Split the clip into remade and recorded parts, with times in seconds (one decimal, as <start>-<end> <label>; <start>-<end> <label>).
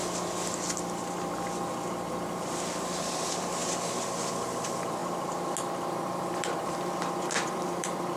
0.0-2.1 recorded; 2.1-3.6 remade; 3.6-4.2 recorded; 4.2-5.0 remade; 5.0-5.9 recorded; 5.9-8.2 remade